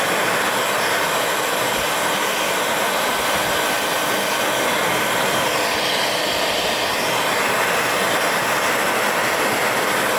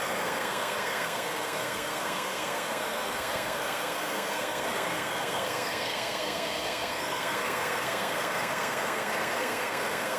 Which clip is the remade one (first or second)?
second